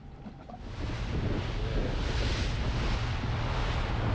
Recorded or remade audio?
recorded